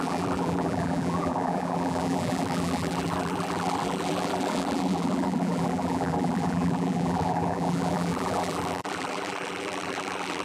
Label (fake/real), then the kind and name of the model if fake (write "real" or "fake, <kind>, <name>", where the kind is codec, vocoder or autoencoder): fake, vocoder, BigVGAN v2